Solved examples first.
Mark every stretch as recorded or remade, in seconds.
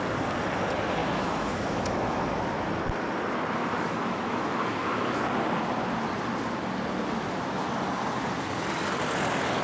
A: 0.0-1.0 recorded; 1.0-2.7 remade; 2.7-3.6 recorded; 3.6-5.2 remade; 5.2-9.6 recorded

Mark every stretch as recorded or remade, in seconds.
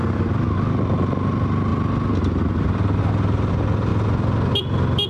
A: 0.0-5.1 recorded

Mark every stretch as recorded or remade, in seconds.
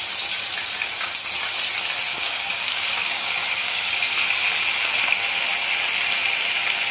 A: 0.0-2.1 recorded; 2.1-4.1 remade; 4.1-6.9 recorded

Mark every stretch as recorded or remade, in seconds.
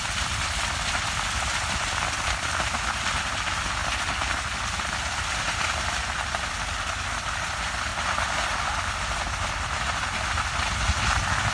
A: 0.0-7.9 remade; 7.9-11.5 recorded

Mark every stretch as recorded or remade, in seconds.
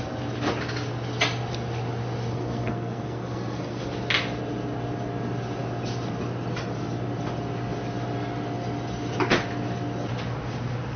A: 0.0-2.3 recorded; 2.3-3.9 remade; 3.9-11.0 recorded